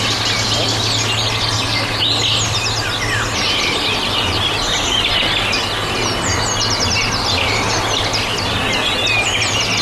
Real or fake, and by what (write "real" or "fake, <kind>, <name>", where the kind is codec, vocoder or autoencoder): real